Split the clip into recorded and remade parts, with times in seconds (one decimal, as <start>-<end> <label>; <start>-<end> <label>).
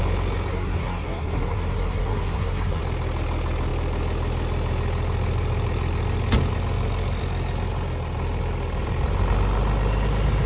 0.0-0.5 recorded; 0.5-2.8 remade; 2.8-10.5 recorded